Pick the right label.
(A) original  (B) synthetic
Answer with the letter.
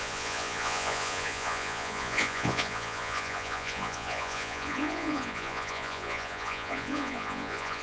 B